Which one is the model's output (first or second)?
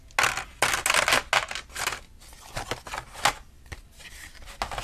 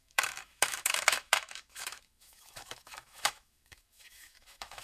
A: second